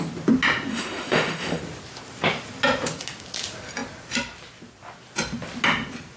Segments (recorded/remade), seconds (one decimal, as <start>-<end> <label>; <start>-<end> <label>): 0.0-0.7 recorded; 0.7-1.6 remade; 1.6-6.2 recorded